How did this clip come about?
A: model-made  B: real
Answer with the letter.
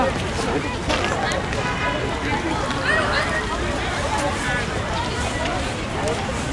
B